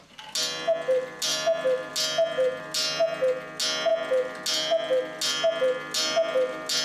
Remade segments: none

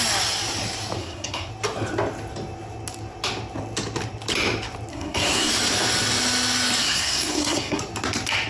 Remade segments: 1.0-1.5 (codec, SNAC); 4.9-5.5; 6.8-7.8

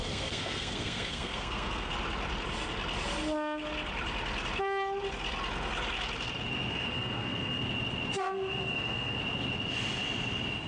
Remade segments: 0.0-1.9 (codec, SNAC); 6.7-7.6; 8.2-9.2

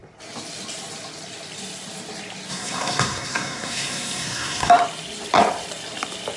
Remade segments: 2.5-4.7 (codec, SNAC)

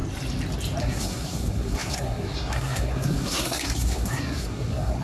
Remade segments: 0.8-5.0 (codec, SNAC)

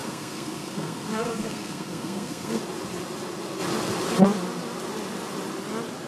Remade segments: 0.0-2.6 (codec, SNAC)